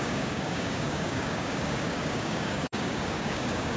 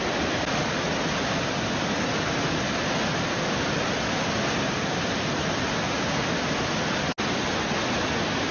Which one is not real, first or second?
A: first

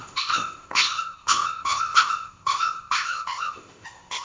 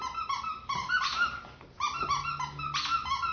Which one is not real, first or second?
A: first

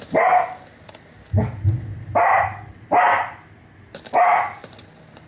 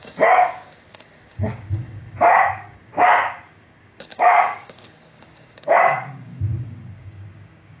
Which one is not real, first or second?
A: second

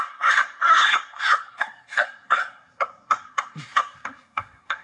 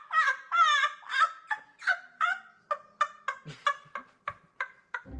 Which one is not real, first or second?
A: first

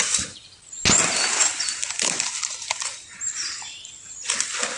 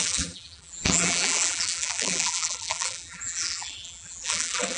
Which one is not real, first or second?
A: second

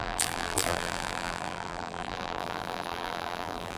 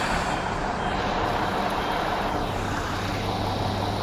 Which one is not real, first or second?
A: first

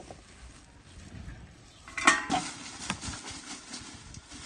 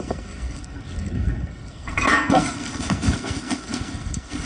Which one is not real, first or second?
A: second